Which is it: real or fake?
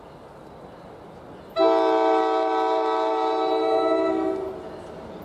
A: real